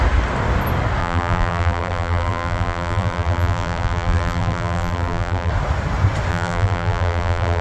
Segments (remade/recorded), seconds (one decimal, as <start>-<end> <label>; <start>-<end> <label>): 0.0-1.0 recorded; 1.0-5.5 remade; 5.5-6.3 recorded; 6.3-7.6 remade